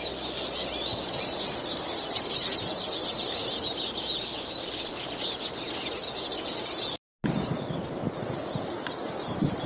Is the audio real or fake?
real